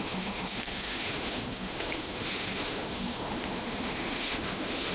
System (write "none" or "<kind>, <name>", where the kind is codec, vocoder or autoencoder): autoencoder, DAC-VAE